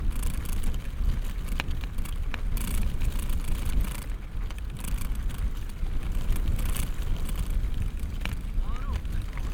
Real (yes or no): yes